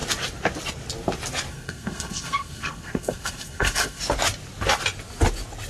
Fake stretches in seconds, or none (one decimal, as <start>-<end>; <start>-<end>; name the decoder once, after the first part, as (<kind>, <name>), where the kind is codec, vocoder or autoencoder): 1.5-4.0 (codec, SNAC)